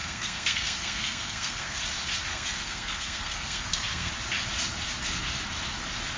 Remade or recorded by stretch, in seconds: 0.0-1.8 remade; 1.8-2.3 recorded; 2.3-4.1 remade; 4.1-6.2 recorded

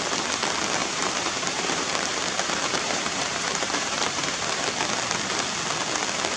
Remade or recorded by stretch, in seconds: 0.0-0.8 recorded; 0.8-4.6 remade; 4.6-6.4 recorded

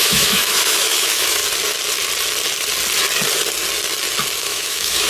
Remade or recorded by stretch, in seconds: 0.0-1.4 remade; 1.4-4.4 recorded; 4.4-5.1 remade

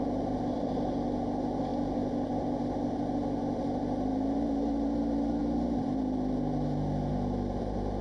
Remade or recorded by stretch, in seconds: 0.0-8.0 recorded